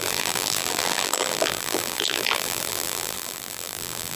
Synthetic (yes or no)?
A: yes